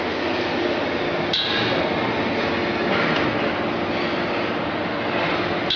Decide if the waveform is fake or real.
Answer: real